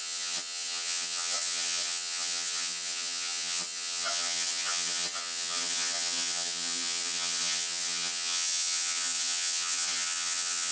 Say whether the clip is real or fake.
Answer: fake